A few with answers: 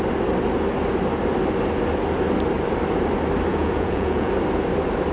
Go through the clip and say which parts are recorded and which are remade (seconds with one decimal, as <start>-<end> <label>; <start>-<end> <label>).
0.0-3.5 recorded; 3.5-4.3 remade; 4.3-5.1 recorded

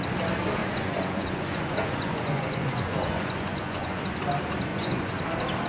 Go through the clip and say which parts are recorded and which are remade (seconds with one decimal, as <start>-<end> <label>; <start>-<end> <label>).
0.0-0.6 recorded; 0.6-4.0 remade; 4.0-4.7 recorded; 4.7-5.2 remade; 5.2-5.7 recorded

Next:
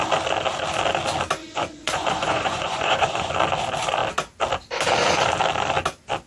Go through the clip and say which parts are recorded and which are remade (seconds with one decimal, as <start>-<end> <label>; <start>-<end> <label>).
0.0-1.4 recorded; 1.4-3.3 remade; 3.3-6.3 recorded

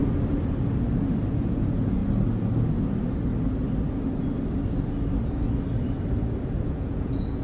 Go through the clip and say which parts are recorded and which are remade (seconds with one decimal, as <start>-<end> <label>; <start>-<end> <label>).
0.0-1.3 recorded; 1.3-2.0 remade; 2.0-6.4 recorded; 6.4-7.4 remade

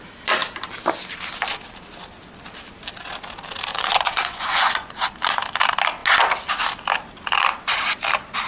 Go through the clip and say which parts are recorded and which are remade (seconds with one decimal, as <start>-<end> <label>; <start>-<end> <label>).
0.0-3.7 recorded; 3.7-4.9 remade; 4.9-8.5 recorded